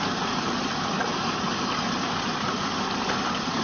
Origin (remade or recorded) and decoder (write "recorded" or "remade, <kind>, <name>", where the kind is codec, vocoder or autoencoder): recorded